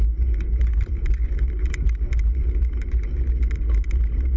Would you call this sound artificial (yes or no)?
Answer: no